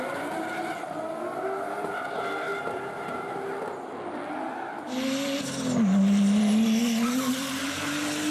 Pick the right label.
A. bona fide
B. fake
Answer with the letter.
A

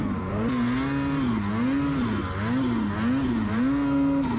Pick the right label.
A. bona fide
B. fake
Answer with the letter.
A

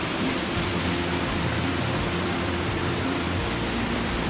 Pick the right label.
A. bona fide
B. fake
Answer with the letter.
B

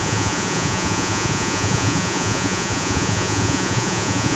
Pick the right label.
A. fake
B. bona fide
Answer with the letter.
A